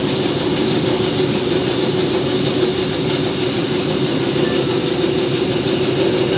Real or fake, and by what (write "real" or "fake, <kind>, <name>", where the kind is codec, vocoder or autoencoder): real